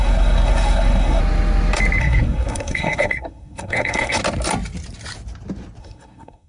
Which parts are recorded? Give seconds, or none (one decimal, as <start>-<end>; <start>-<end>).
1.2-2.0; 4.2-5.8